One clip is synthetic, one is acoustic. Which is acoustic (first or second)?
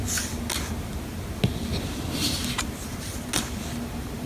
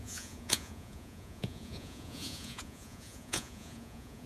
first